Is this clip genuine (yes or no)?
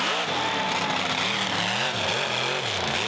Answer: yes